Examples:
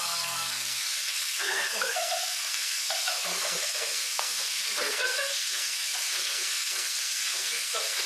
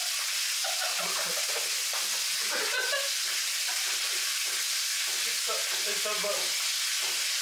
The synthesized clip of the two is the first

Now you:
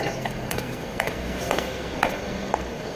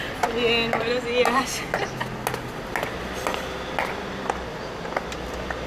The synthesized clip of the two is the first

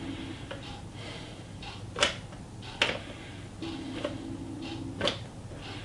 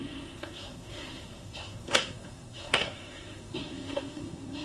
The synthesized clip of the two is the second